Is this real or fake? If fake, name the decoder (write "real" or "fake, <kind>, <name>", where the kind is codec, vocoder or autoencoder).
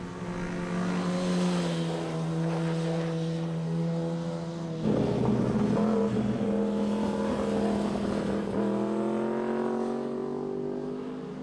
real